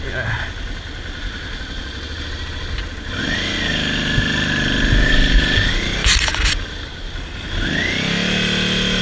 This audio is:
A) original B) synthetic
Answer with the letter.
A